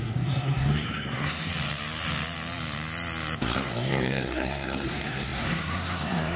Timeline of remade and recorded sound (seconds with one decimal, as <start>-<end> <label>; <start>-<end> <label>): 0.0-1.5 remade; 1.5-3.4 recorded; 3.4-6.4 remade